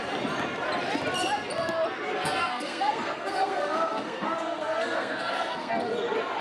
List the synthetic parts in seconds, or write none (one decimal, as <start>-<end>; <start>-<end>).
2.1-5.7